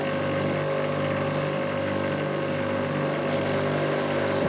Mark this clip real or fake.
real